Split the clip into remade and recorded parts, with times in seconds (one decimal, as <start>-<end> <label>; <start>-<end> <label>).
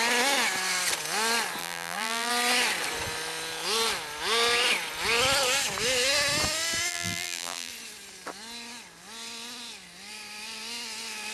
0.0-1.6 recorded; 1.6-2.3 remade; 2.3-6.9 recorded; 6.9-7.7 remade; 7.7-11.3 recorded